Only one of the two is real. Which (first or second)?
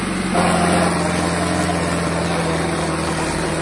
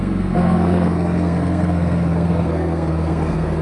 first